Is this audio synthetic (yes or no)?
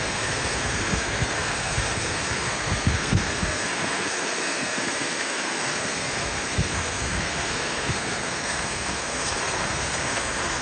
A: yes